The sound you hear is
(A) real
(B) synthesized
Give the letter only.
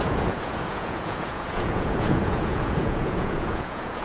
B